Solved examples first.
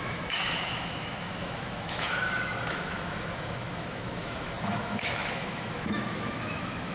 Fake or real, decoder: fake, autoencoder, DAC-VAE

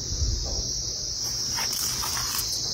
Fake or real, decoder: real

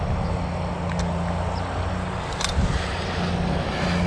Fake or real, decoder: real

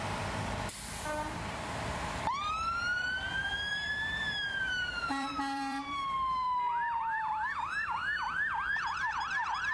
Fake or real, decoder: fake, vocoder, BigVGAN v2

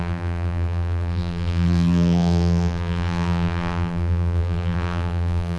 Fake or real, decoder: fake, vocoder, BigVGAN v2